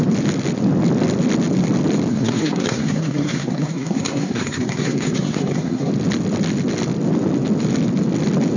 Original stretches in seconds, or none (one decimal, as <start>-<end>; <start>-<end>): 0.0-2.1; 5.9-8.6